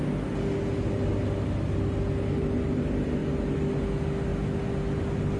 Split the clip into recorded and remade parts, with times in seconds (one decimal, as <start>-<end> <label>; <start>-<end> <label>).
0.0-5.4 recorded